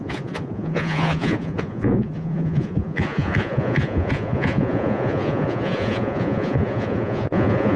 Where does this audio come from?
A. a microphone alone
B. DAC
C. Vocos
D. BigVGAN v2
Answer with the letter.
C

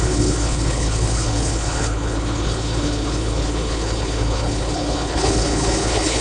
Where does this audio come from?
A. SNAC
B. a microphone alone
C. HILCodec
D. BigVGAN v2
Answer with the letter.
C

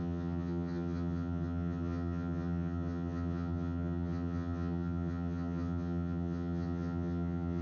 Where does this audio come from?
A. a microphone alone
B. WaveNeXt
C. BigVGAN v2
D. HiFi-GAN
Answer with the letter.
D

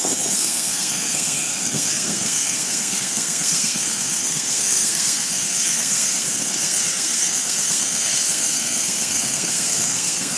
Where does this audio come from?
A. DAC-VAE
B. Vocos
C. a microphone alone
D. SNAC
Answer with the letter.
D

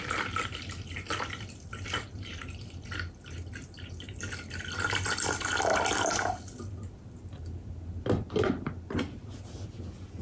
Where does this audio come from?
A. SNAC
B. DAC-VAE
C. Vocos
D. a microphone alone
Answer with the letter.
D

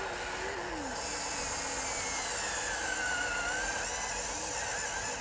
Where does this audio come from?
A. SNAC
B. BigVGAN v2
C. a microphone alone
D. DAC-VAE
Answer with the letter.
C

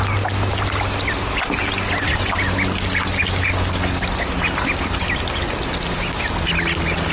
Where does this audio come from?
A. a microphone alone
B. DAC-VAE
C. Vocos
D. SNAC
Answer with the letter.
A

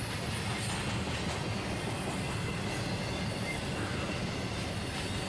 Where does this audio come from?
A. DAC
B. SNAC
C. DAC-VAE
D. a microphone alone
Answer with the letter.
D